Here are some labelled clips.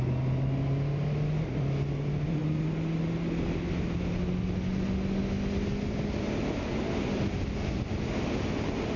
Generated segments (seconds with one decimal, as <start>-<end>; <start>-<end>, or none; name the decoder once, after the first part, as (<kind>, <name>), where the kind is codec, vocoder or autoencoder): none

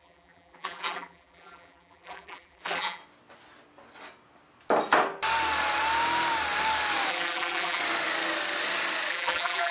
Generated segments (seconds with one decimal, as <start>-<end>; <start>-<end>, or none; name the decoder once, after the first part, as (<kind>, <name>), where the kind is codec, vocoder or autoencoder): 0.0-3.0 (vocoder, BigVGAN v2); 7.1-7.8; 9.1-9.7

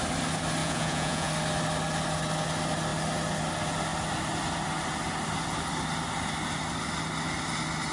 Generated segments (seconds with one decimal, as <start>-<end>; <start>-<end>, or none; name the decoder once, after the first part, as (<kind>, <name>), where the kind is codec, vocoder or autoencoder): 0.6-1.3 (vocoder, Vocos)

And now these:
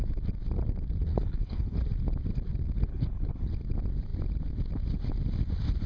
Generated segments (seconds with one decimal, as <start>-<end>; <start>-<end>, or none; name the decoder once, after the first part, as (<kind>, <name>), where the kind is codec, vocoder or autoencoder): 1.1-1.8 (codec, HILCodec); 2.9-3.5